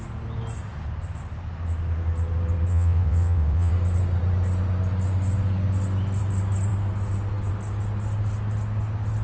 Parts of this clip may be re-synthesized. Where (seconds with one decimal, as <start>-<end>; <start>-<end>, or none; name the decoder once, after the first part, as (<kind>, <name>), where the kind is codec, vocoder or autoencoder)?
2.7-3.7 (vocoder, WaveNeXt)